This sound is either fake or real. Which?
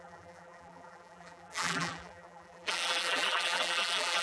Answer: fake